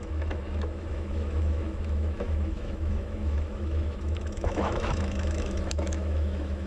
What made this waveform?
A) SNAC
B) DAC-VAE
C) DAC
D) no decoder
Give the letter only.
B